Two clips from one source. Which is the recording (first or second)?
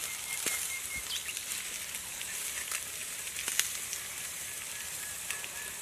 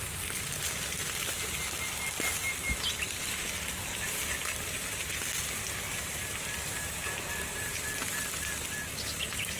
second